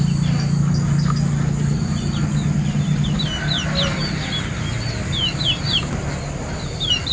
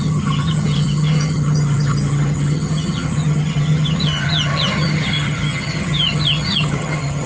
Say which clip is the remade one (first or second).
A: second